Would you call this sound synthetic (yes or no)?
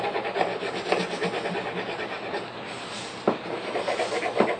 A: no